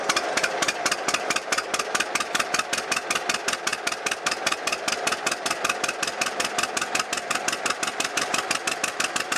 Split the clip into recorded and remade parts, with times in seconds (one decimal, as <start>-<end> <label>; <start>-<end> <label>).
0.0-9.4 recorded